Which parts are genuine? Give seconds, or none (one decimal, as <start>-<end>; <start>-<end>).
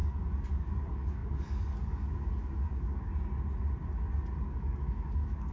3.1-4.4